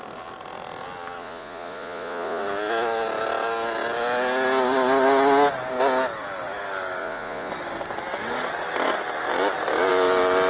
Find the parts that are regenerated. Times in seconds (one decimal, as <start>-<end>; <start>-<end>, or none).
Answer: 1.2-2.4; 7.0-7.5